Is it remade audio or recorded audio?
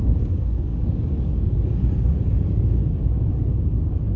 remade